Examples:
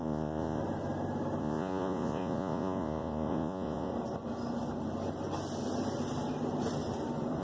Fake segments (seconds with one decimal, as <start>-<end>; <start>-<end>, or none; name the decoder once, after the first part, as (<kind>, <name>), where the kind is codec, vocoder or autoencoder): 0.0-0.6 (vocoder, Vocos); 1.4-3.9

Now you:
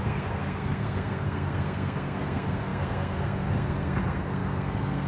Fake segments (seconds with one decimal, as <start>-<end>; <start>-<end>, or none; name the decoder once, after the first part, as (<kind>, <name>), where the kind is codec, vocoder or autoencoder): 0.0-5.1 (codec, SNAC)

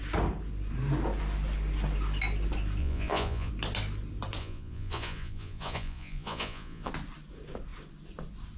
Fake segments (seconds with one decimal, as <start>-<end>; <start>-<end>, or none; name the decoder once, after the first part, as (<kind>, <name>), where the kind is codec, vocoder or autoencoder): 2.8-3.5 (vocoder, Vocos); 4.4-6.9

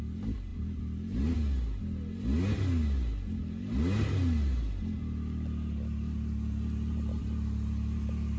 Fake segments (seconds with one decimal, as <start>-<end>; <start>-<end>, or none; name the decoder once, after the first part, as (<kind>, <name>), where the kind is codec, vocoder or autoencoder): none